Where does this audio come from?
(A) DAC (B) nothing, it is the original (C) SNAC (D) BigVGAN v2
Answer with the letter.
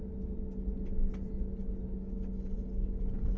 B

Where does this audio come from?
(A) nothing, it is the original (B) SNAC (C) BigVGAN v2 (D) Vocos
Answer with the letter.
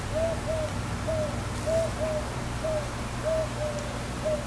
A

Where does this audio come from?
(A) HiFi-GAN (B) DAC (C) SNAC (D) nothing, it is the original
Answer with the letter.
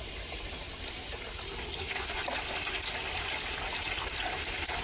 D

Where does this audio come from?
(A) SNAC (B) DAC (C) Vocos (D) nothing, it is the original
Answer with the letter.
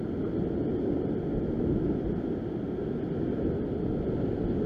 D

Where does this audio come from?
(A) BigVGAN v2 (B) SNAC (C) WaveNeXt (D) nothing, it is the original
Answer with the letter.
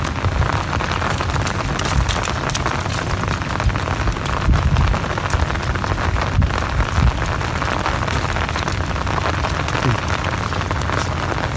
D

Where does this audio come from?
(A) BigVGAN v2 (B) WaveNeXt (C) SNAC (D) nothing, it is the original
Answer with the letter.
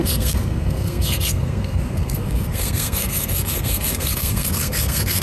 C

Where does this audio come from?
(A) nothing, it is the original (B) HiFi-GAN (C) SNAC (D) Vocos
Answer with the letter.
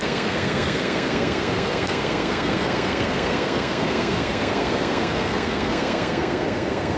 C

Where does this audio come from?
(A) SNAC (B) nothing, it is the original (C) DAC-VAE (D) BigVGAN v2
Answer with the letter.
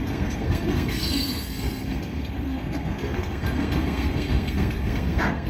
A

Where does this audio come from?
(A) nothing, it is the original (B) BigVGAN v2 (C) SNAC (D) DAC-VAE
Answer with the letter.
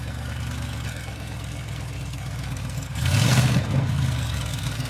C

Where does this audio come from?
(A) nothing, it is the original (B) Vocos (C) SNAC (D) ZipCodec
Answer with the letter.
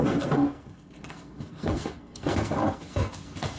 C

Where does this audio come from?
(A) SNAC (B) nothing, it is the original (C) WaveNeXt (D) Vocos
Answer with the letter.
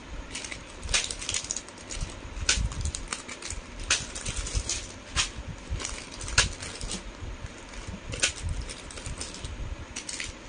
B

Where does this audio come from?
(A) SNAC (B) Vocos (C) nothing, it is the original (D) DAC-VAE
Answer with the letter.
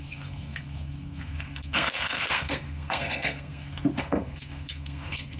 A